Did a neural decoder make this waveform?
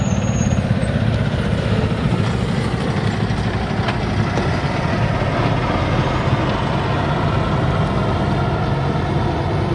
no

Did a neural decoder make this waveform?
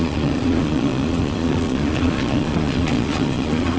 yes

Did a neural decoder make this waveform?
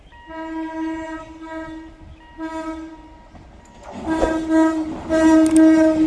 no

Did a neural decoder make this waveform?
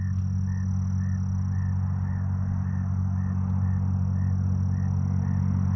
no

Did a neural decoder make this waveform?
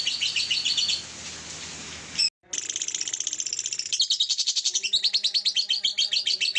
no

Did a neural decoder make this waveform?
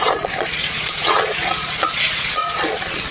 yes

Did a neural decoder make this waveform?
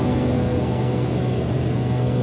yes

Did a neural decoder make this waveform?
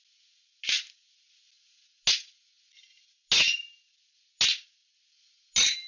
no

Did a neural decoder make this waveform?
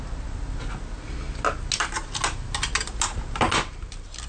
no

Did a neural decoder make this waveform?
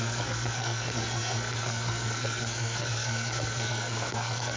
yes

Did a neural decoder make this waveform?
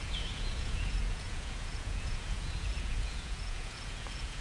yes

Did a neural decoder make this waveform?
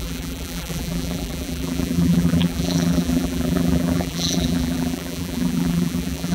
yes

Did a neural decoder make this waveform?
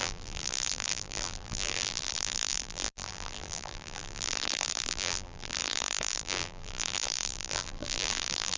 yes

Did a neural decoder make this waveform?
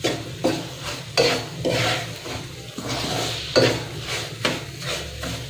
no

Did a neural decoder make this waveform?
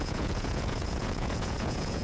yes